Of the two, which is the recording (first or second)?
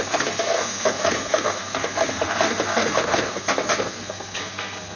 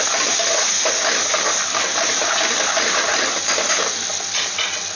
second